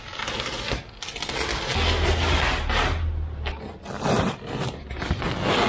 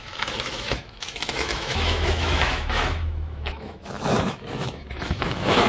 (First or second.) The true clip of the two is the first